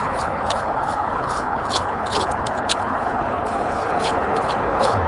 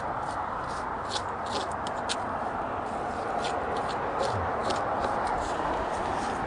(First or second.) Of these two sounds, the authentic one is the second